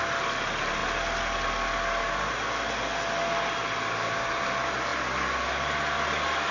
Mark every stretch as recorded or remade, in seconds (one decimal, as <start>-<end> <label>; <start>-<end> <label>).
0.0-6.5 recorded